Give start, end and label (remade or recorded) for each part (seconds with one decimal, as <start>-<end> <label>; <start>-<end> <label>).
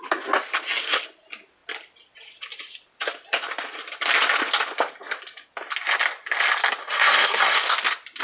0.0-6.8 recorded; 6.8-7.6 remade; 7.6-8.2 recorded